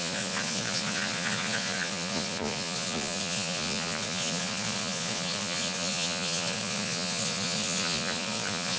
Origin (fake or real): fake